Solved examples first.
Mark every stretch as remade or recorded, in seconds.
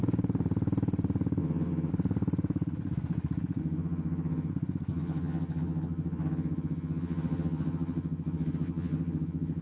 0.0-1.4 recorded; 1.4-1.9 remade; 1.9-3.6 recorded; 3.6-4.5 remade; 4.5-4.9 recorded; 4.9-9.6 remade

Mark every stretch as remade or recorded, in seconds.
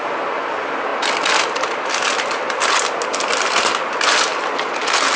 0.0-5.2 recorded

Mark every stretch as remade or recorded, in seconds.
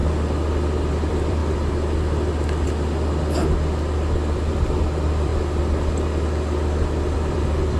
0.0-0.9 recorded; 0.9-1.4 remade; 1.4-4.3 recorded; 4.3-5.3 remade; 5.3-7.3 recorded; 7.3-7.8 remade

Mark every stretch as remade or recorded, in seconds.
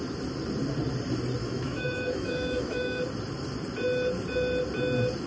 0.0-1.4 recorded; 1.4-3.0 remade; 3.0-5.3 recorded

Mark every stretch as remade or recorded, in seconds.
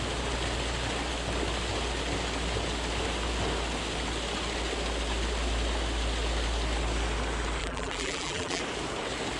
0.0-7.6 recorded; 7.6-8.6 remade; 8.6-9.4 recorded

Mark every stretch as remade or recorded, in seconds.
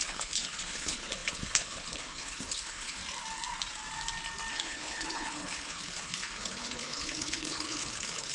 0.0-3.0 remade; 3.0-4.5 recorded; 4.5-8.3 remade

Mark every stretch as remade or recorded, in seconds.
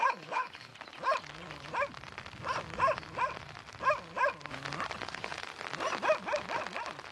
0.0-0.7 remade; 0.7-5.0 recorded; 5.0-5.5 remade; 5.5-7.1 recorded